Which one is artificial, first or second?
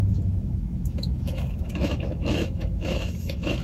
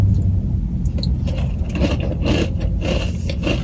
first